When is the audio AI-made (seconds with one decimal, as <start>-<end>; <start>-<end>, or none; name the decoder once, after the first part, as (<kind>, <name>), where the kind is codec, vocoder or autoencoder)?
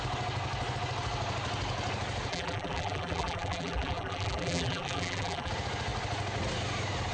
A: 2.3-5.5 (vocoder, BigVGAN v2)